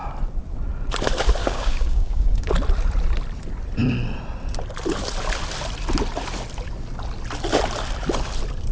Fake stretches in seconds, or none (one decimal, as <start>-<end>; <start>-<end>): 1.4-2.5